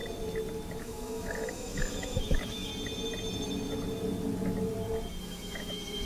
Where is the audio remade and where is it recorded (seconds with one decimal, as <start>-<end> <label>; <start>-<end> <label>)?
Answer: 0.0-0.8 recorded; 0.8-2.7 remade; 2.7-5.2 recorded; 5.2-6.1 remade